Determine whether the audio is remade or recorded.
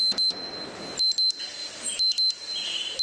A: recorded